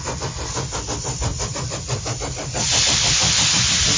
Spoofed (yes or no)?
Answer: no